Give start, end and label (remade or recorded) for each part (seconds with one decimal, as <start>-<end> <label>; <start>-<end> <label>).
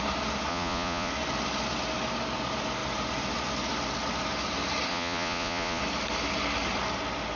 0.0-0.5 recorded; 0.5-1.1 remade; 1.1-4.9 recorded; 4.9-5.8 remade; 5.8-7.4 recorded